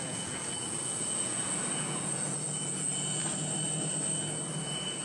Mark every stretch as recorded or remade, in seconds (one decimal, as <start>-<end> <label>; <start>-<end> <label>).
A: 0.0-3.2 remade; 3.2-4.6 recorded; 4.6-5.0 remade